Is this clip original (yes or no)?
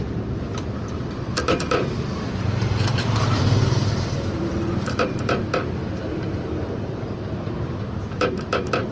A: no